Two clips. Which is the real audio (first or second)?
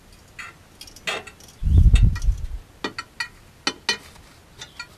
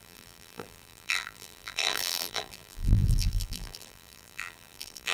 first